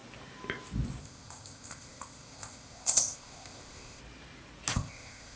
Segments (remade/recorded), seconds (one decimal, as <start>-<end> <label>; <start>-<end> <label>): 0.0-1.0 recorded; 1.0-4.0 remade; 4.0-4.7 recorded; 4.7-5.4 remade